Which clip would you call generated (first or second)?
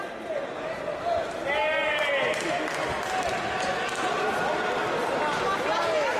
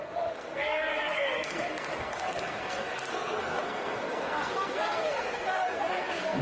second